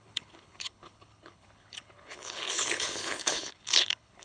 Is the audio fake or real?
fake